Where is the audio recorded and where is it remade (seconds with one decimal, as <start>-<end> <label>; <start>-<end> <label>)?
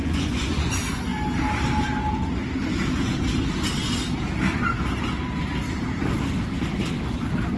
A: 0.0-0.7 remade; 0.7-7.6 recorded